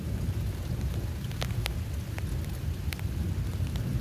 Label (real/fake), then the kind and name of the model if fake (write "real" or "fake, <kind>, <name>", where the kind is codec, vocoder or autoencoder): real